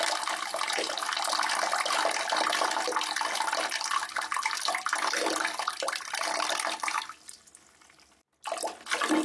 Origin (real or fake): real